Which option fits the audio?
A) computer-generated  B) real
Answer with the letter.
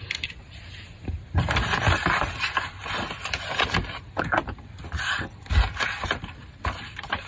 B